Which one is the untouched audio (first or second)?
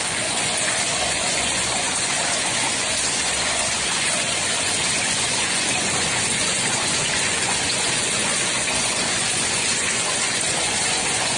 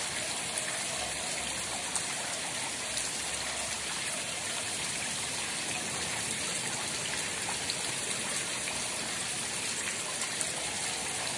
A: second